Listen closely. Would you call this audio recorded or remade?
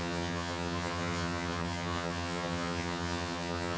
remade